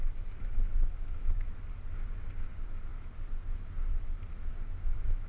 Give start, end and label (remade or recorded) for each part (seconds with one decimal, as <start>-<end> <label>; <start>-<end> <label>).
0.0-5.3 recorded